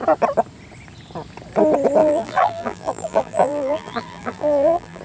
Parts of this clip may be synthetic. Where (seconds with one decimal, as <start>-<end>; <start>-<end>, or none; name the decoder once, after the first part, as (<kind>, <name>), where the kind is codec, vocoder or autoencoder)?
2.0-5.0 (vocoder, BigVGAN v2)